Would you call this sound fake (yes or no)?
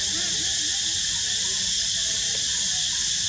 no